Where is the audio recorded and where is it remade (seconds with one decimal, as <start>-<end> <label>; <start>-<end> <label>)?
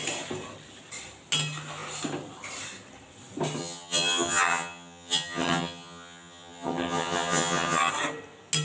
0.0-3.6 recorded; 3.6-7.9 remade; 7.9-8.6 recorded